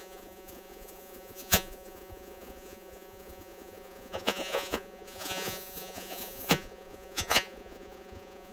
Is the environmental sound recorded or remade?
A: remade